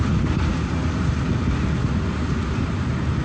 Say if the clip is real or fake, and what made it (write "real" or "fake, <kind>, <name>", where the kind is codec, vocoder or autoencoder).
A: real